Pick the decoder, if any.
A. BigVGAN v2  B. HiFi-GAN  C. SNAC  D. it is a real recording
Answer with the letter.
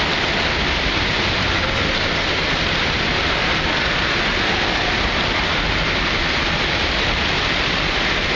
D